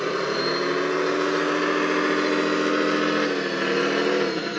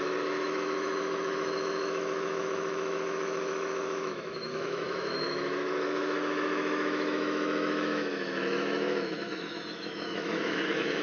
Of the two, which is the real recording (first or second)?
first